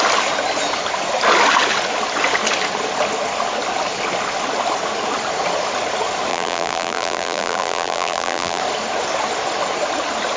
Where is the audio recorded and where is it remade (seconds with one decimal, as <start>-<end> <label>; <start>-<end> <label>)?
0.0-6.3 recorded; 6.3-8.6 remade; 8.6-10.4 recorded

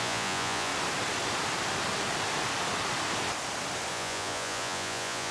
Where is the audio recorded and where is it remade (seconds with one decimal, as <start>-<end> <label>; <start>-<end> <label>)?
0.0-0.7 remade; 0.7-3.9 recorded; 3.9-5.3 remade

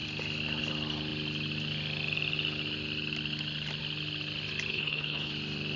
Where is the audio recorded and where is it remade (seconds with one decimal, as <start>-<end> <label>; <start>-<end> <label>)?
0.0-4.7 recorded; 4.7-5.3 remade; 5.3-5.8 recorded